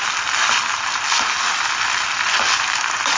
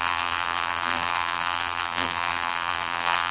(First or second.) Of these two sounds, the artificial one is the second